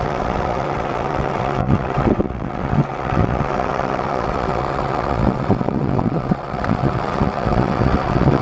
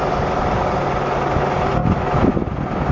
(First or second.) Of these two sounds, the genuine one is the second